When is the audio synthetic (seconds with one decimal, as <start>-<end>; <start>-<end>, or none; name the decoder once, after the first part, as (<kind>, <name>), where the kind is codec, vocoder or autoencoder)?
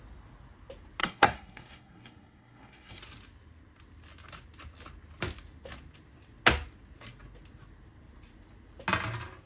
1.0-3.0 (codec, SNAC)